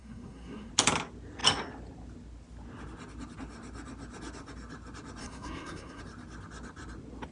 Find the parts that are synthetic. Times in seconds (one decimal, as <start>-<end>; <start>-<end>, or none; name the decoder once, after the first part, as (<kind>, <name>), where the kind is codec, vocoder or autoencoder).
0.0-0.7 (codec, SNAC); 5.2-6.0